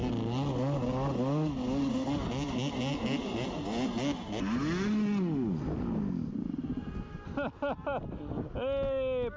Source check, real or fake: real